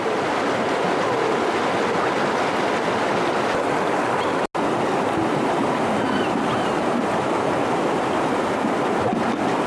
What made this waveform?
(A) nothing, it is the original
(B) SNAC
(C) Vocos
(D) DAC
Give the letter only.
A